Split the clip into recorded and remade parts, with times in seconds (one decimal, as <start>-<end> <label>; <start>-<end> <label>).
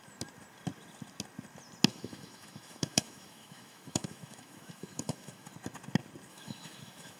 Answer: 0.0-1.9 recorded; 1.9-5.5 remade; 5.5-6.3 recorded; 6.3-7.2 remade